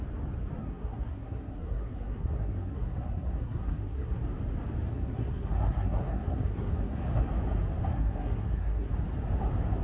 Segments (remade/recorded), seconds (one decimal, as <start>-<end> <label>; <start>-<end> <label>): 0.0-0.6 recorded; 0.6-4.2 remade; 4.2-4.9 recorded; 4.9-7.3 remade; 7.3-7.9 recorded; 7.9-8.9 remade; 8.9-9.8 recorded